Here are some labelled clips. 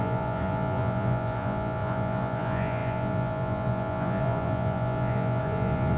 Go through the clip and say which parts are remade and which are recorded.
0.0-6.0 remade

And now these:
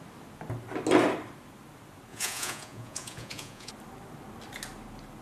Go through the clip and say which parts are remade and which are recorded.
0.0-2.1 recorded; 2.1-3.7 remade; 3.7-5.2 recorded

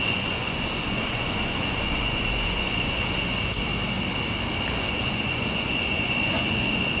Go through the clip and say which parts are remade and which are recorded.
0.0-3.7 remade; 3.7-4.7 recorded; 4.7-7.0 remade